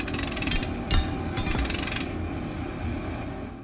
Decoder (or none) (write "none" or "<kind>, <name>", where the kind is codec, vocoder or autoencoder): none